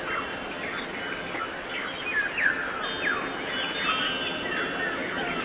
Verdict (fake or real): real